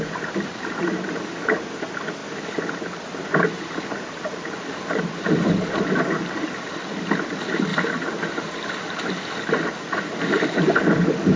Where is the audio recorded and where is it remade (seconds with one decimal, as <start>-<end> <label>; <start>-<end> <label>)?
0.0-11.4 recorded